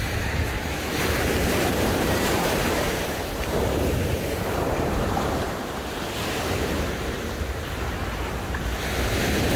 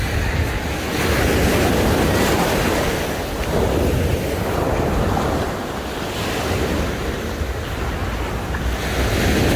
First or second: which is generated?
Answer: first